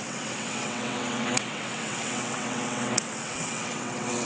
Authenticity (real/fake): fake